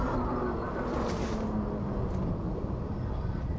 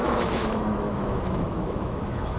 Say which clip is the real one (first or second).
first